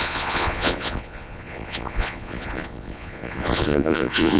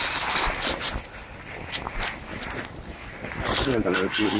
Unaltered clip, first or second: second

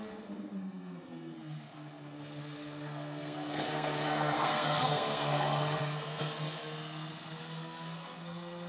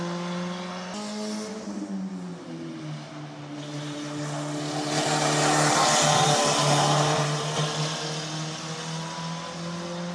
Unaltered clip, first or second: second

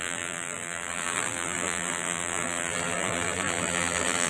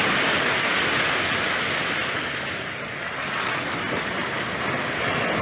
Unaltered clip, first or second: second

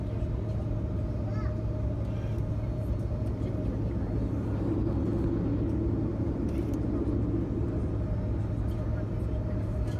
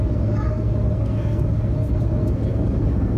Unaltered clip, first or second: first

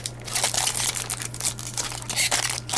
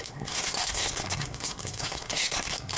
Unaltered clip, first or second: first